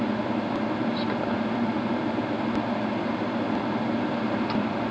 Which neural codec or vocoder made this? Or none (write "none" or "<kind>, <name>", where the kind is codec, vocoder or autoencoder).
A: none